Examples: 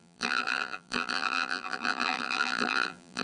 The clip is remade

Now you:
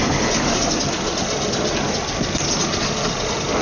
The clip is recorded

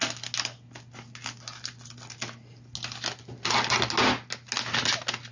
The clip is recorded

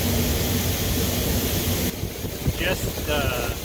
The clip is recorded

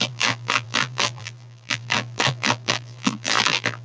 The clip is remade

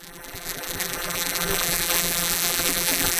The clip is remade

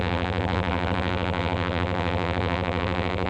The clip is remade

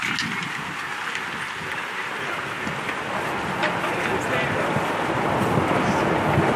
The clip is recorded